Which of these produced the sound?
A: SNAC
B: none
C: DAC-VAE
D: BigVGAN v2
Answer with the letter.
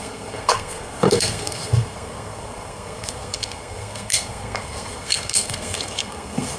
A